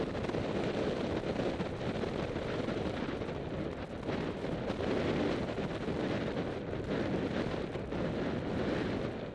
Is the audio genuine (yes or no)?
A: yes